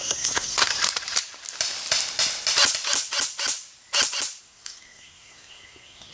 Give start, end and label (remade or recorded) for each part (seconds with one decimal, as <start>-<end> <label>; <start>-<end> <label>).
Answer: 0.0-0.7 remade; 0.7-4.4 recorded; 4.4-6.1 remade